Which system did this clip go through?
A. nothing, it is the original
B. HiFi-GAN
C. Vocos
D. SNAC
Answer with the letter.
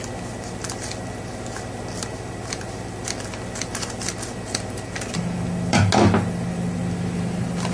A